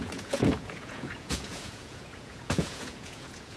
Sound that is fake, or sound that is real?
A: fake